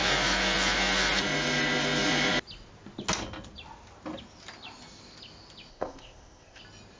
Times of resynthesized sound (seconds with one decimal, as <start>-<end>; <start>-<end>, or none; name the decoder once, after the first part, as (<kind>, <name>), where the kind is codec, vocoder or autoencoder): 5.7-6.6 (codec, ZipCodec)